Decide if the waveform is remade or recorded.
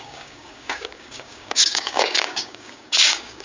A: remade